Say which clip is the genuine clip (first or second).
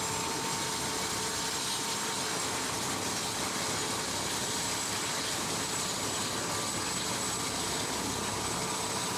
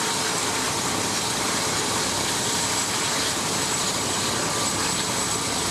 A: first